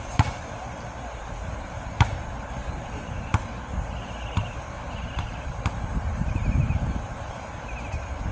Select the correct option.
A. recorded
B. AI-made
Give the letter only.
B